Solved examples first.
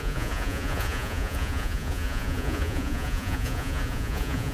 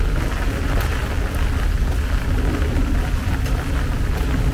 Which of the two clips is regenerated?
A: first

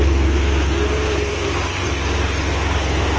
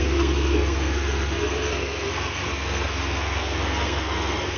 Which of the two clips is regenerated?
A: second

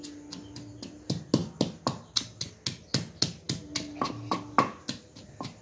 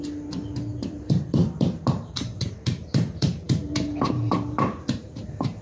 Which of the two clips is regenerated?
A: second